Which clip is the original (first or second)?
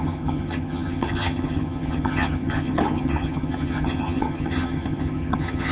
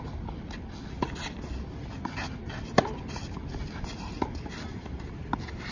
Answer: second